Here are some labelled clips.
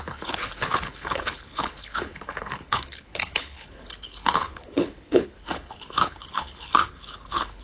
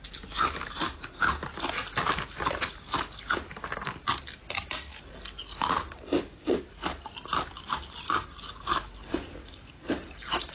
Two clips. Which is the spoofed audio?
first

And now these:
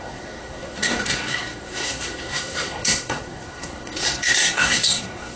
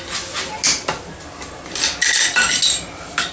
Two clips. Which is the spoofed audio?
first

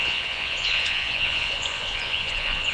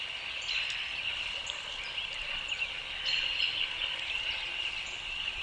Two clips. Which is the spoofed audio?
first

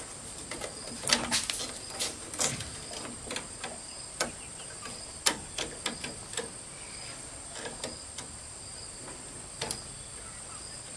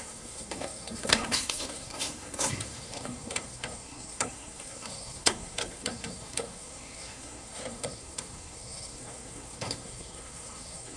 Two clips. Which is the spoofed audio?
second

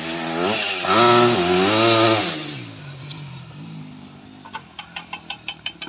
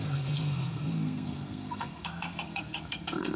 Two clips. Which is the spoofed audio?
second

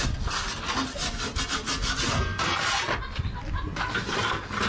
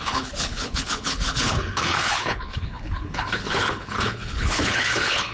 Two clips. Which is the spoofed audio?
second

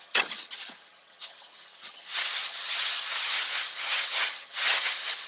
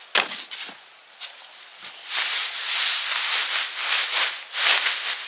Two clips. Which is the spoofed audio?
first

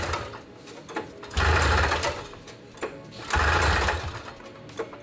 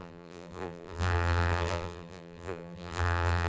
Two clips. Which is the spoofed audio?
second